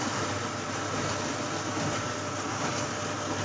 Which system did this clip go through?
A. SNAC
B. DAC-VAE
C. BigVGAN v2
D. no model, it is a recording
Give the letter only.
D